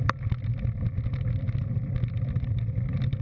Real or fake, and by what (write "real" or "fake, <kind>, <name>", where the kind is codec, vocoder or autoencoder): real